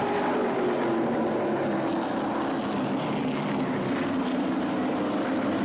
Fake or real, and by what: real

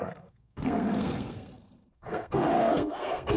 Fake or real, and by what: fake, codec, SNAC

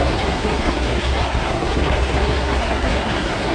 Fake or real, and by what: fake, codec, SNAC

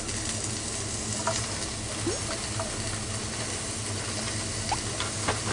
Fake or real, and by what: real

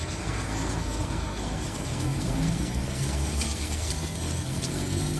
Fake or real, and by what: fake, codec, SNAC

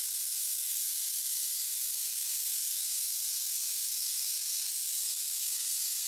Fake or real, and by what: fake, codec, SNAC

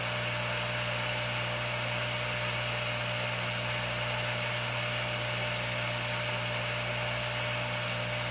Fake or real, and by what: real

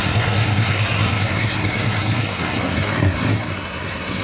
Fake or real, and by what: fake, codec, SNAC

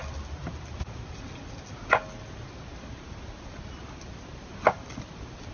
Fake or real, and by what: real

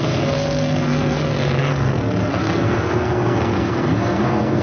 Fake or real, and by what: fake, codec, SNAC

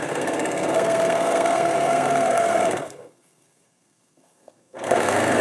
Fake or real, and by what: fake, codec, SNAC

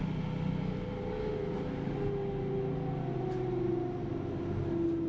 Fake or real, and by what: real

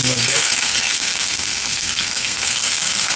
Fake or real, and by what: fake, codec, SNAC